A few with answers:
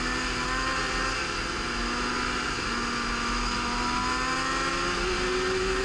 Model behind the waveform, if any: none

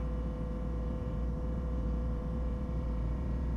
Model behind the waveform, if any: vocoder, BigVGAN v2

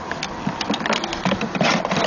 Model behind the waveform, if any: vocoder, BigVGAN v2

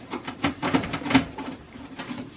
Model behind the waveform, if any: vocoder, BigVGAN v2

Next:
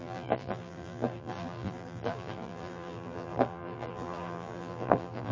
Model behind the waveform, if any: vocoder, BigVGAN v2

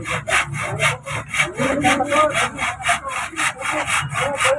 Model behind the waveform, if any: none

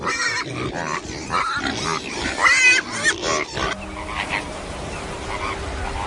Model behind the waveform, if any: none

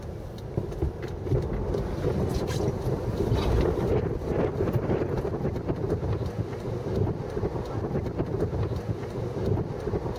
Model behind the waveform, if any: none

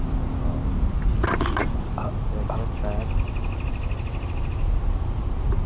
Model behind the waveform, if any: none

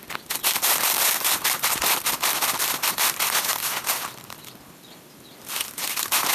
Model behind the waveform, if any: vocoder, BigVGAN v2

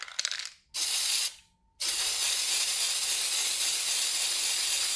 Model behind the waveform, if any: none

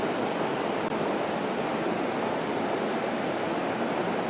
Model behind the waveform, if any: vocoder, BigVGAN v2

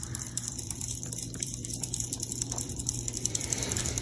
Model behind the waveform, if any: vocoder, BigVGAN v2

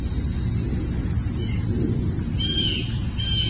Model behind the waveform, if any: none